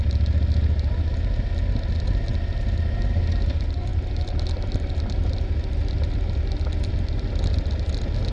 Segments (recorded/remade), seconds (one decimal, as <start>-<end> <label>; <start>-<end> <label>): 0.0-8.3 recorded